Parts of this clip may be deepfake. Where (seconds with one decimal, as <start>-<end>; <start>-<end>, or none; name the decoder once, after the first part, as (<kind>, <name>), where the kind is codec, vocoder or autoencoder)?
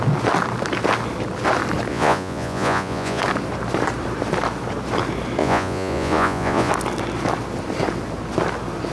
1.9-3.2 (vocoder, Vocos); 5.4-6.7